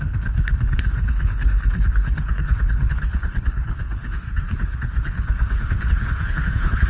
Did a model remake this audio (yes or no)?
yes